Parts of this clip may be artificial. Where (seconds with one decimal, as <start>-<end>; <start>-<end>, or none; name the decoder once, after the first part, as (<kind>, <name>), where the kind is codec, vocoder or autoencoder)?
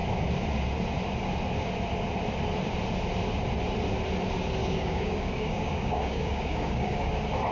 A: 4.6-7.1 (codec, DAC)